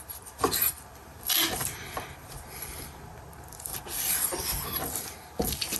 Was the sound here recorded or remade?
remade